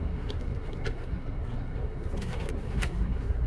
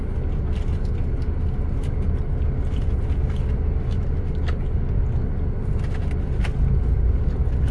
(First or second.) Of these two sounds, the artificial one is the first